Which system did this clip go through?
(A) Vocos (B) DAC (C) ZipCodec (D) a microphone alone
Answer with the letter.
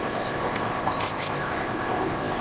C